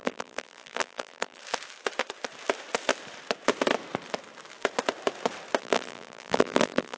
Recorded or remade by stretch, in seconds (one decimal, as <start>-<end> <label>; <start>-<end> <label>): 0.0-1.4 remade; 1.4-5.6 recorded; 5.6-7.0 remade